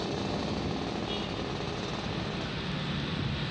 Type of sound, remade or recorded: recorded